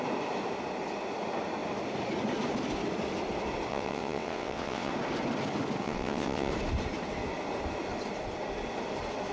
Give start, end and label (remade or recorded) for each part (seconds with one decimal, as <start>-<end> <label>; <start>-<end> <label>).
0.0-3.7 recorded; 3.7-4.9 remade; 4.9-5.8 recorded; 5.8-6.5 remade; 6.5-9.3 recorded